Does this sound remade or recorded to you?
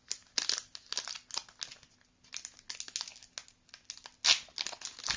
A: recorded